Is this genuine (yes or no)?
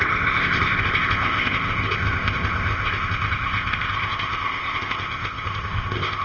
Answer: no